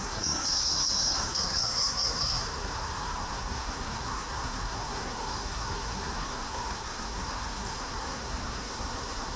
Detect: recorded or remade remade